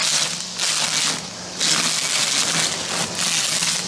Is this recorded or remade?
recorded